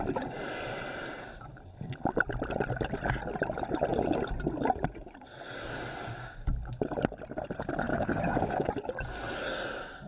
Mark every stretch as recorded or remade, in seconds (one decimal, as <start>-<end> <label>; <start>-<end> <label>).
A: 0.0-7.9 recorded; 7.9-8.7 remade; 8.7-10.1 recorded

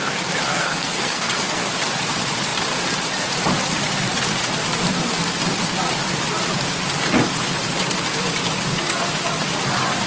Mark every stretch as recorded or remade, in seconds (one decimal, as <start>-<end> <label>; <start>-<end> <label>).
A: 0.0-0.5 recorded; 0.5-1.7 remade; 1.7-10.1 recorded

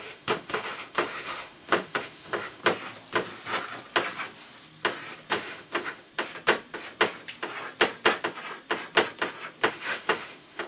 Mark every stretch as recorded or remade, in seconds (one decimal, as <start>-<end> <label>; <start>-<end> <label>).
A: 0.0-2.6 remade; 2.6-5.3 recorded; 5.3-6.1 remade; 6.1-9.7 recorded; 9.7-10.7 remade

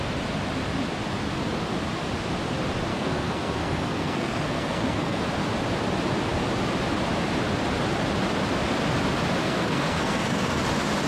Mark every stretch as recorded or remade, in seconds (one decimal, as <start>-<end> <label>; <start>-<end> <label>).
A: 0.0-2.9 recorded; 2.9-5.2 remade; 5.2-9.4 recorded; 9.4-10.6 remade; 10.6-11.1 recorded

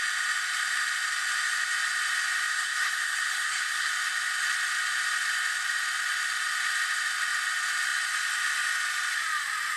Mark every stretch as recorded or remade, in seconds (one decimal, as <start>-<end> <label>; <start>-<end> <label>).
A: 0.0-2.5 recorded; 2.5-3.9 remade; 3.9-9.8 recorded

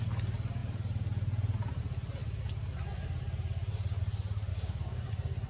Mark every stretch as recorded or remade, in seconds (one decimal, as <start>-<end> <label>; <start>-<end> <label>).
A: 0.0-4.5 recorded; 4.5-5.1 remade; 5.1-5.5 recorded

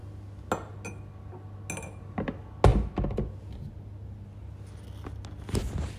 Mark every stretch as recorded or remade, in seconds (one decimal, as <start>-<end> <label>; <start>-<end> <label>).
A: 0.0-6.0 recorded